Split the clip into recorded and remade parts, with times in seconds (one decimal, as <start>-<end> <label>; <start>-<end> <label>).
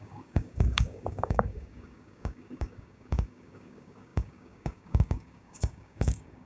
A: 0.0-6.5 remade